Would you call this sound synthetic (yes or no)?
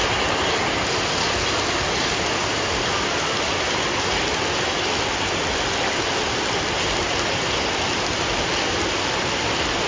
no